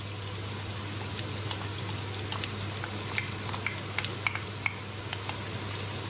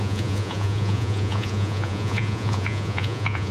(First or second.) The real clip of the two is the first